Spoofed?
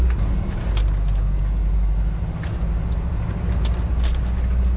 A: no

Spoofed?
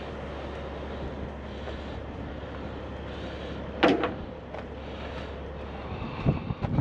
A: no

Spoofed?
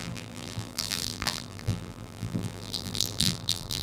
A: yes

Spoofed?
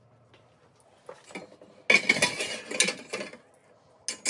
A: no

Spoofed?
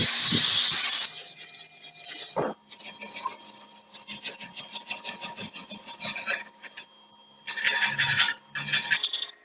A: no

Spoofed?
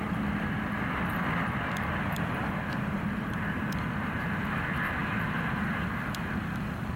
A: yes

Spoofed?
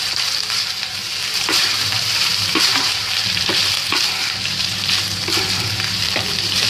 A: yes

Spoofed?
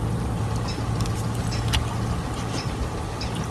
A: no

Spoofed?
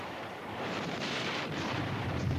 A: yes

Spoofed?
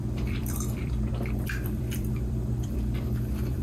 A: yes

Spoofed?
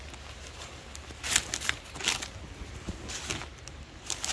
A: no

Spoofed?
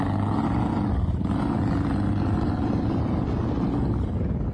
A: no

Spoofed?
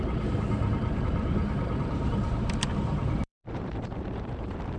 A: yes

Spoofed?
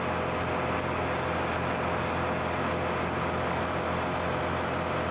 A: no